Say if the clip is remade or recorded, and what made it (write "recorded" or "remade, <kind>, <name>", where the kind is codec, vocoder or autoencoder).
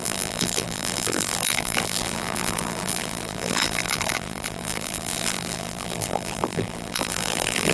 remade, vocoder, BigVGAN v2